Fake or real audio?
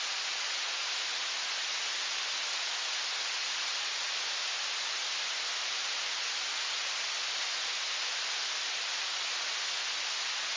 real